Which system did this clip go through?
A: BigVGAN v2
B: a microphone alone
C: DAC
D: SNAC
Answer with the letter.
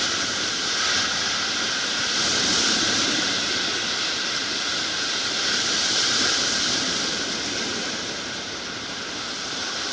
A